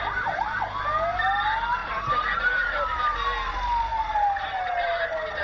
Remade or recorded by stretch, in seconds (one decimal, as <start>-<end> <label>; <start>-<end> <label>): 0.0-1.8 recorded; 1.8-2.4 remade; 2.4-5.4 recorded